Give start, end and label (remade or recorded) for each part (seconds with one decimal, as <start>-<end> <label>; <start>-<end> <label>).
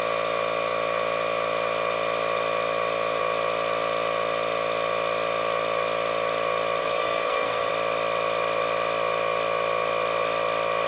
0.0-6.8 recorded; 6.8-7.7 remade; 7.7-10.9 recorded